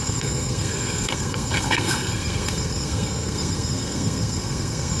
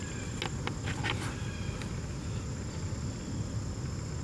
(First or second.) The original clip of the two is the second